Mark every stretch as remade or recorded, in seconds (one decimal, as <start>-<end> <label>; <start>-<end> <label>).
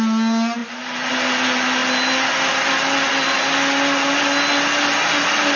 0.0-5.6 recorded